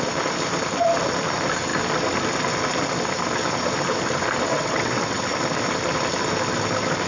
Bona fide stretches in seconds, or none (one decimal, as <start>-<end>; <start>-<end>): 0.0-4.5; 5.2-7.1